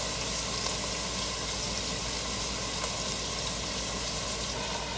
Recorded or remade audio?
recorded